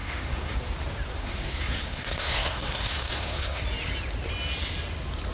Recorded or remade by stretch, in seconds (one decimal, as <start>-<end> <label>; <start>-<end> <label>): 0.0-0.6 remade; 0.6-1.1 recorded; 1.1-3.6 remade; 3.6-5.3 recorded